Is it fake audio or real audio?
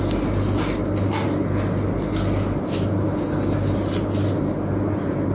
real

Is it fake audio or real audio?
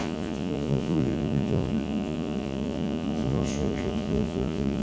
fake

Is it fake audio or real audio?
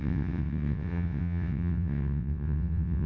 fake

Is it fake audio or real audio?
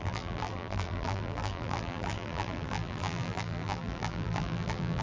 fake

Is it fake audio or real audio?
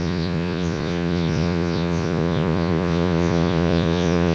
fake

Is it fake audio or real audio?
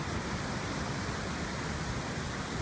real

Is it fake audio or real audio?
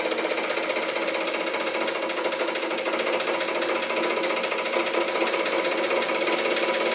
real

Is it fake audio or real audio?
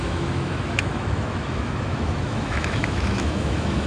fake